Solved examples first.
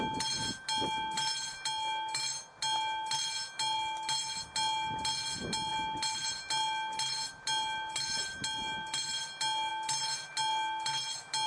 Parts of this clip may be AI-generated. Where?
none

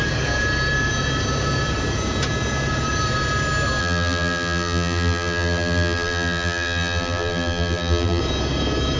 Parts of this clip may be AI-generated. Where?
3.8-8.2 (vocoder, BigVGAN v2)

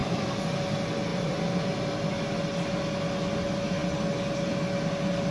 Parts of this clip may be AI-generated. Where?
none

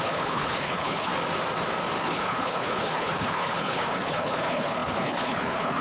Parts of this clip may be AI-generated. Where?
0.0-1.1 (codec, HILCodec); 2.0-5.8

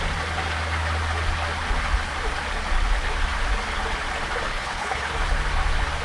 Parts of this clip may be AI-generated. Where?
4.5-5.1 (codec, HILCodec)

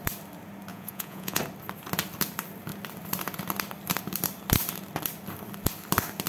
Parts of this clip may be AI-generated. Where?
0.7-1.4 (vocoder, Vocos)

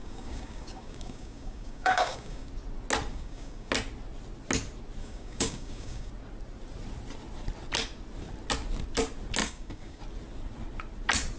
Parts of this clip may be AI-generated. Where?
0.0-2.5 (codec, DAC); 3.1-3.7; 5.0-6.1; 9.4-10.0

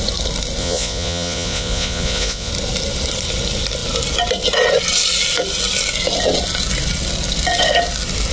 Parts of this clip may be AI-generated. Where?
0.6-2.5 (vocoder, Vocos)